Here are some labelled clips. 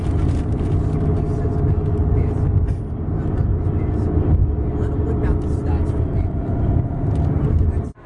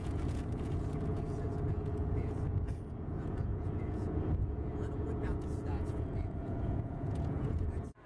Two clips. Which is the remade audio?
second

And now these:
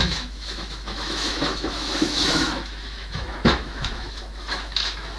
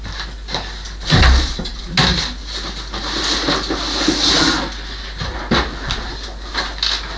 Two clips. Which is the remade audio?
first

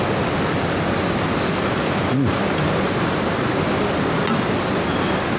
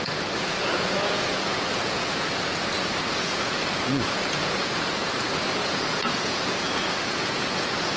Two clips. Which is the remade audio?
second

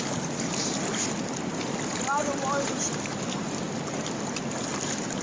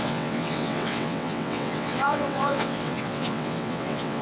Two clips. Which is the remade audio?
second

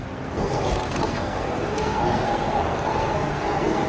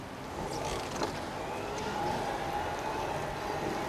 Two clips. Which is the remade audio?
first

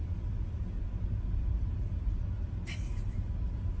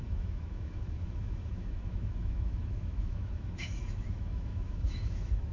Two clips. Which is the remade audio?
second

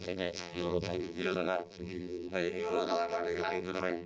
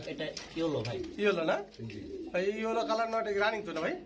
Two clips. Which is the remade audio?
first